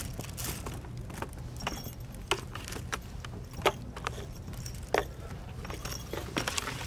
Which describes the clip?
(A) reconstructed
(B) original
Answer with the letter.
B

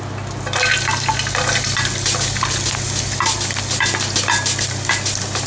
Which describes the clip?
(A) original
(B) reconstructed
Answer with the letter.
A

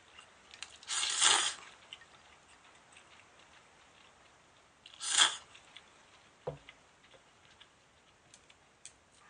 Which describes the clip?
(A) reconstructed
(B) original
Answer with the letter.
B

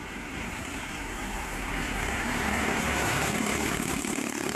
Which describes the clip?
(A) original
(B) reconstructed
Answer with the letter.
B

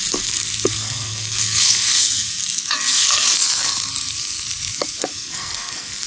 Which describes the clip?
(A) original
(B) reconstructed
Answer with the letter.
B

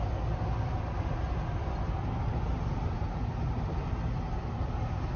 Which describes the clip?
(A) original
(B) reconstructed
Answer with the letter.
A